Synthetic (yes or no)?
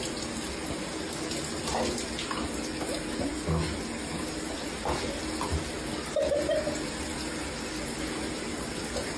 no